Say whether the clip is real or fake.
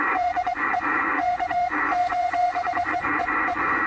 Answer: fake